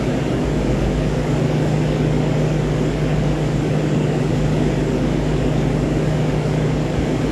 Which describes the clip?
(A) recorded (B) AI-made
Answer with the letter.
B